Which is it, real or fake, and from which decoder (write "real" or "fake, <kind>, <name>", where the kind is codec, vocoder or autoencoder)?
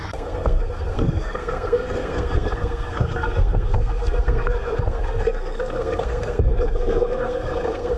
fake, codec, SNAC